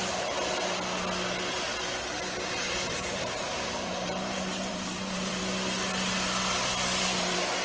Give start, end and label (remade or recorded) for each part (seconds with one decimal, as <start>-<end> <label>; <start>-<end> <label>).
0.0-2.6 recorded; 2.6-5.4 remade; 5.4-7.0 recorded; 7.0-7.6 remade